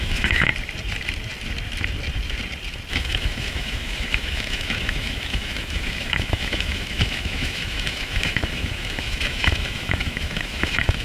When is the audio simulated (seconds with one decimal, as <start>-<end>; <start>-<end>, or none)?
0.0-0.5; 2.9-11.0

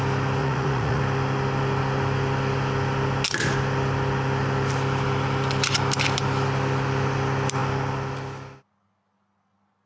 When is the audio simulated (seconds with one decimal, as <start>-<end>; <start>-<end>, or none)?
0.4-1.0